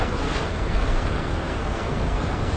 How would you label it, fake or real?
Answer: fake